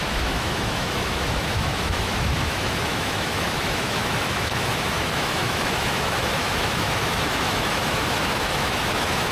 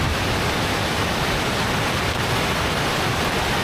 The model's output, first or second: first